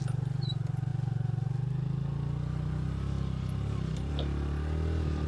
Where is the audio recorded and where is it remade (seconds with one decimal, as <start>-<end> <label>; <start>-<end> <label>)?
0.0-5.3 recorded